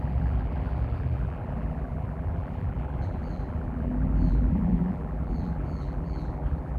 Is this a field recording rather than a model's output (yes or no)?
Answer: no